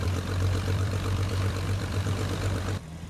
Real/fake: fake